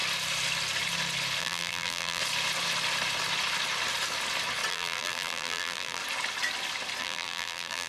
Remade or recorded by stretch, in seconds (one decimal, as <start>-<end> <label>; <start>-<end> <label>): 0.0-1.4 recorded; 1.4-2.2 remade; 2.2-4.7 recorded; 4.7-6.0 remade; 6.0-7.0 recorded; 7.0-7.9 remade